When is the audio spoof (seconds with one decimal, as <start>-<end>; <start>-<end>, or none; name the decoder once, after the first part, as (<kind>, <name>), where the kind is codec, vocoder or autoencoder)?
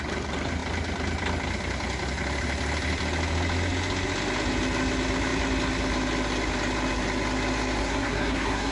7.8-8.7 (codec, SNAC)